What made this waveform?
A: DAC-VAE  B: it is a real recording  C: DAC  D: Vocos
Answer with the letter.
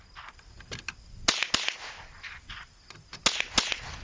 B